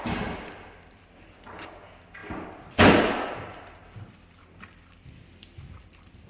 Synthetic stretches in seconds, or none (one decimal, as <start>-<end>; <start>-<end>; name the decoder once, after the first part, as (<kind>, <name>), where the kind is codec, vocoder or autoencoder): 0.0-6.3 (vocoder, BigVGAN v2)